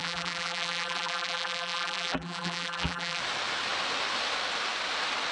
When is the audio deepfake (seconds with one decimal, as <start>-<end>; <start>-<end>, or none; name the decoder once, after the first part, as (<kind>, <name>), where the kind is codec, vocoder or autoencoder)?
0.0-3.2 (vocoder, BigVGAN v2)

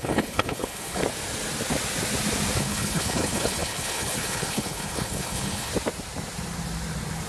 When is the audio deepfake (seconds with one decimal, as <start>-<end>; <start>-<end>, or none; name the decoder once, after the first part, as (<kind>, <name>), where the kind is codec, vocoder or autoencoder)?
0.0-1.0 (codec, HILCodec); 2.6-5.7